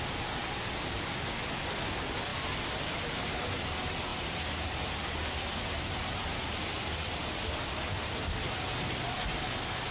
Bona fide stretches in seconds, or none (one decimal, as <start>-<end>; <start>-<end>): 0.0-9.9